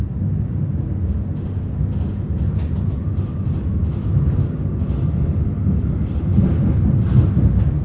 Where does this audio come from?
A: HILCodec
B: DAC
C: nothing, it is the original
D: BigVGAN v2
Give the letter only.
C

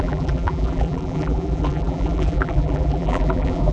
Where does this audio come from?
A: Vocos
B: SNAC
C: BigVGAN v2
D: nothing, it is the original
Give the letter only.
C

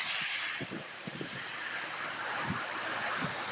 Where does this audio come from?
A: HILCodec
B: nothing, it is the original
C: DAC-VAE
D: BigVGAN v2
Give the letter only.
B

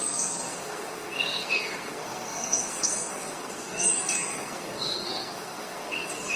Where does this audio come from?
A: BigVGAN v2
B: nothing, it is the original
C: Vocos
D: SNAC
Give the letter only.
D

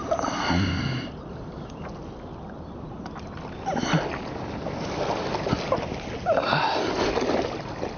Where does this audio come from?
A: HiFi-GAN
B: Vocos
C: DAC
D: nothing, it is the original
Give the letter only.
D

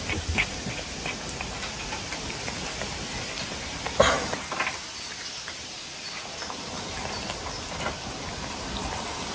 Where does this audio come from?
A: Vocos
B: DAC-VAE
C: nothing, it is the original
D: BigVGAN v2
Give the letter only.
C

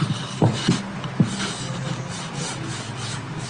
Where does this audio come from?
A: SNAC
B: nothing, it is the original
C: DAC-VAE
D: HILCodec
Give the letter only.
B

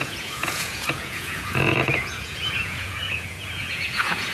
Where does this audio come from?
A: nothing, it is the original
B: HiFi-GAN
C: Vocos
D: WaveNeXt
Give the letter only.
C